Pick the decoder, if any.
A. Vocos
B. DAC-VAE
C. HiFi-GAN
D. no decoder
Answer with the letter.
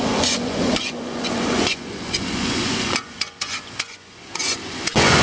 A